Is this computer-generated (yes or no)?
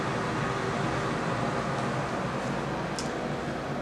no